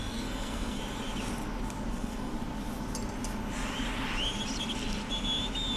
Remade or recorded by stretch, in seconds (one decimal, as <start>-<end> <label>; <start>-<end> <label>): 0.0-0.8 remade; 0.8-1.9 recorded; 1.9-2.3 remade; 2.3-5.8 recorded